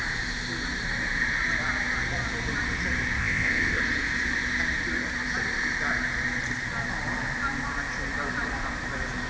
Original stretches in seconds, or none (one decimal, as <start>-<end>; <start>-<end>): 0.0-3.2; 3.8-9.3